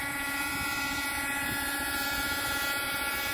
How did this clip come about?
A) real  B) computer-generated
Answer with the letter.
B